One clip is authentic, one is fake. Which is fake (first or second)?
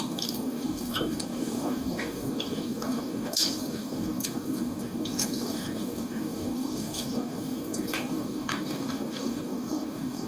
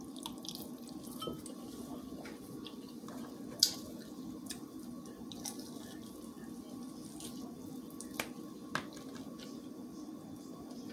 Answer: first